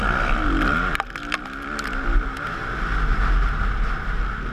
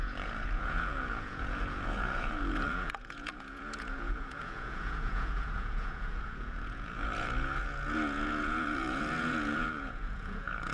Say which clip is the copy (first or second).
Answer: second